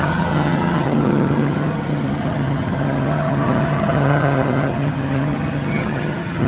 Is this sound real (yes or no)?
no